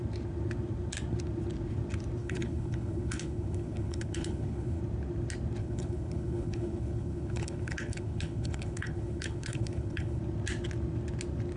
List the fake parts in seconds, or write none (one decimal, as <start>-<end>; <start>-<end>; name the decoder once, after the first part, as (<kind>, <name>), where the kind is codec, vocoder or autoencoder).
2.2-4.8 (codec, HILCodec); 5.6-10.2